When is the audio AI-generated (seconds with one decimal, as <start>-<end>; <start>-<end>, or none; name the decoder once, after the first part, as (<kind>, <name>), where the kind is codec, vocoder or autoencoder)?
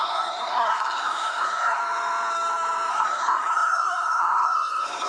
0.0-1.8 (codec, SNAC); 2.9-5.1